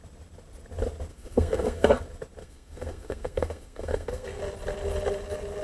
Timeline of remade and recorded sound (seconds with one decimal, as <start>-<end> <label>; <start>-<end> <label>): 0.0-1.1 recorded; 1.1-1.9 remade; 1.9-2.4 recorded; 2.4-4.4 remade; 4.4-5.6 recorded